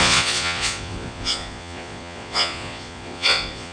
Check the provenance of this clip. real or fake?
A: fake